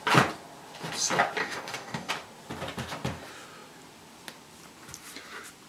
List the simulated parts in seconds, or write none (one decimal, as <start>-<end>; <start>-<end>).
1.4-2.1